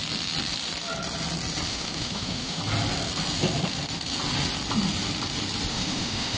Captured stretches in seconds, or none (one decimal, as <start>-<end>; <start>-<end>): 0.0-1.7; 2.6-5.7